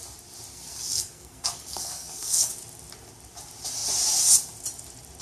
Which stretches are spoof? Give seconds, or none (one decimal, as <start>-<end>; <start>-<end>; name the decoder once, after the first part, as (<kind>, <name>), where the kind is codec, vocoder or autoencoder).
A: 0.5-2.5 (codec, SNAC)